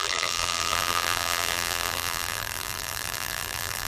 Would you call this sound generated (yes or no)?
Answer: yes